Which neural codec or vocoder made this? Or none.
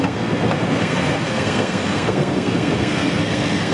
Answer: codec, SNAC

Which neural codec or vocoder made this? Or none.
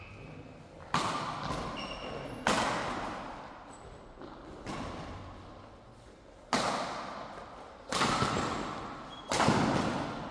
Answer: none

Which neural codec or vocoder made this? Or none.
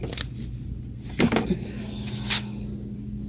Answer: none